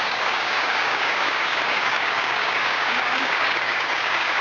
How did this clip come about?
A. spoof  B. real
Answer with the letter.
A